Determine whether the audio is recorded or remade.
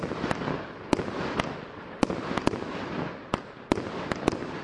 recorded